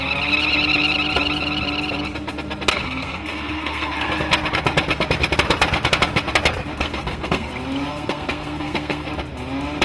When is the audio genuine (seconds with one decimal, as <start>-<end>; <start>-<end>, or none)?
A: 0.0-2.7; 4.1-6.8; 7.5-7.9; 9.1-9.8